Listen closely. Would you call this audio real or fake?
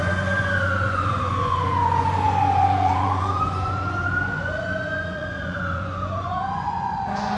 fake